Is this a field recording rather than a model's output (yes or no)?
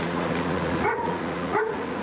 no